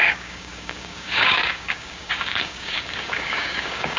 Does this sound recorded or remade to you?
remade